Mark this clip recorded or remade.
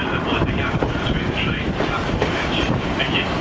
recorded